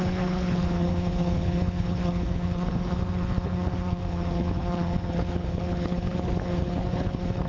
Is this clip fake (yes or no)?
yes